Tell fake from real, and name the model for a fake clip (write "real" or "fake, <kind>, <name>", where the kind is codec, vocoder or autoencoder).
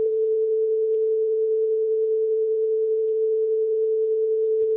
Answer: fake, codec, HILCodec